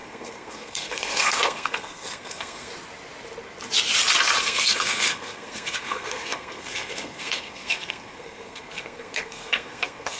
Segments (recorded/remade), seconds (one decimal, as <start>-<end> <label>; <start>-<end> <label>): 0.0-2.7 remade; 2.7-4.4 recorded; 4.4-10.2 remade